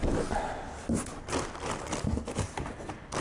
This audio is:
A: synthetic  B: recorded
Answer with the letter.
B